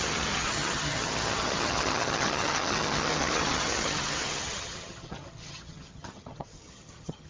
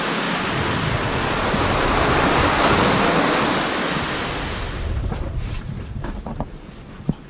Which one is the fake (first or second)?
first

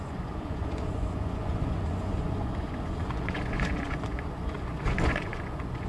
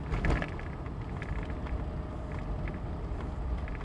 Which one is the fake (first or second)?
first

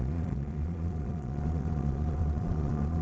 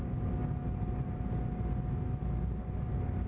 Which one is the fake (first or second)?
first